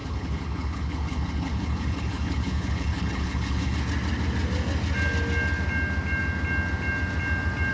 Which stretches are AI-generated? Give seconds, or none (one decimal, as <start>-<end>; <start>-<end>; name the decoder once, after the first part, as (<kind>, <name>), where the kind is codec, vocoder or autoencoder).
0.0-3.8 (codec, HILCodec)